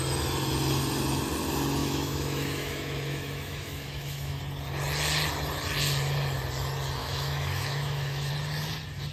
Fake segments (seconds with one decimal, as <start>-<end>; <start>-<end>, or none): 1.8-4.4; 7.0-8.3